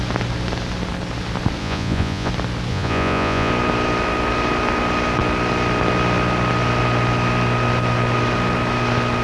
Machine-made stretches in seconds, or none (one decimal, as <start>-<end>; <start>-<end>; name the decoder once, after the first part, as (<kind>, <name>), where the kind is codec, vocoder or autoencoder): 1.6-2.3 (vocoder, Vocos); 2.7-3.5